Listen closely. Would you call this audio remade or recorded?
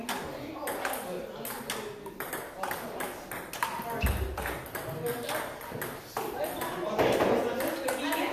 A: recorded